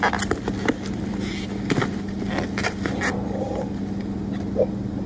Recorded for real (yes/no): yes